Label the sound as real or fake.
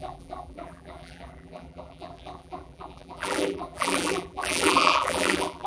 fake